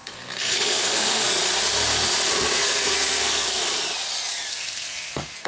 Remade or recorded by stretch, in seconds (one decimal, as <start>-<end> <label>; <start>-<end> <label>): 0.0-1.4 remade; 1.4-2.6 recorded; 2.6-3.6 remade; 3.6-4.5 recorded; 4.5-5.5 remade